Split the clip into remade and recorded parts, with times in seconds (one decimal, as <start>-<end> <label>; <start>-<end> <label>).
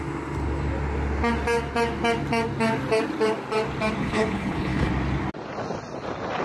0.0-4.0 recorded; 4.0-4.9 remade; 4.9-6.4 recorded